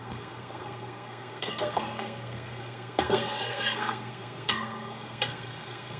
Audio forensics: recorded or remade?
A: remade